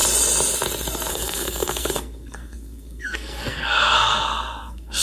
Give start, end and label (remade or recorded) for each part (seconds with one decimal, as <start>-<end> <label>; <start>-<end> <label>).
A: 0.0-1.1 recorded; 1.1-5.0 remade